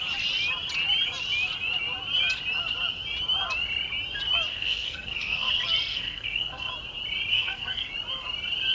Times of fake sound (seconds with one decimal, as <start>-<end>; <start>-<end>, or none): 4.5-5.5; 5.9-6.7; 7.3-7.9